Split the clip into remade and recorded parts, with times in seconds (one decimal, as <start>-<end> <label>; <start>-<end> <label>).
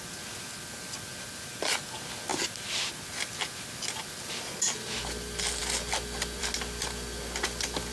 0.0-7.9 recorded